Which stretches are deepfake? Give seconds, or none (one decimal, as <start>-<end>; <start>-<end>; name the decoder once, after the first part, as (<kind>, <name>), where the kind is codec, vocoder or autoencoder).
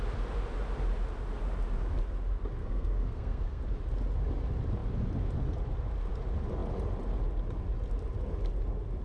2.6-3.6 (codec, SNAC)